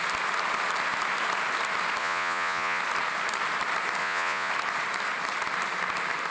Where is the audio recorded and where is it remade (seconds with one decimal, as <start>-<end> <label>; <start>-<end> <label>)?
0.0-2.0 recorded; 2.0-2.8 remade; 2.8-4.0 recorded; 4.0-4.5 remade; 4.5-6.3 recorded